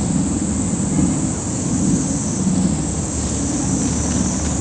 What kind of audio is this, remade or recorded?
recorded